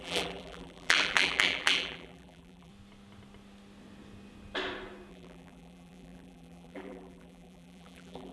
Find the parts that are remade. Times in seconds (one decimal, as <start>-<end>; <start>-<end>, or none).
0.0-2.7; 5.1-8.3